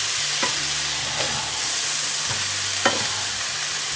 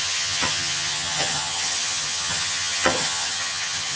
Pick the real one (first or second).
first